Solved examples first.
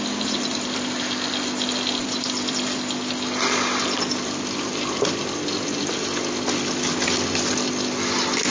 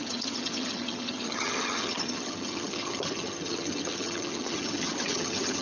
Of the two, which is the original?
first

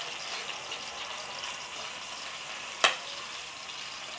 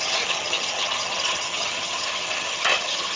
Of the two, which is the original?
first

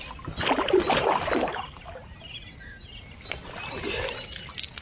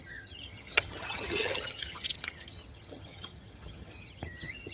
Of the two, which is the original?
first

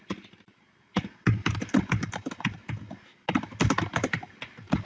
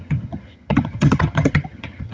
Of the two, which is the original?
first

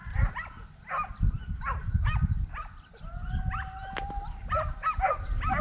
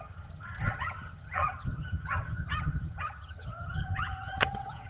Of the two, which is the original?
first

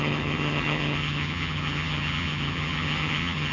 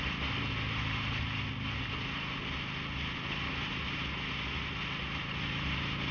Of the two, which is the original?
second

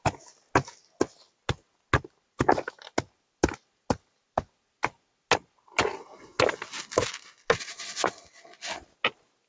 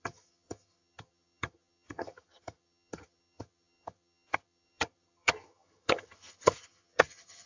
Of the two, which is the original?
first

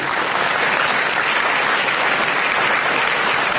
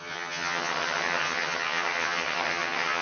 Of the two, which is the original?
first